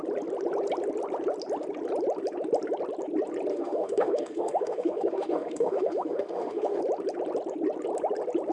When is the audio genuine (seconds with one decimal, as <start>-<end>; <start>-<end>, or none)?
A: 0.0-3.5; 6.8-8.5